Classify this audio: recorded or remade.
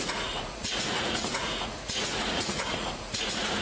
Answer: remade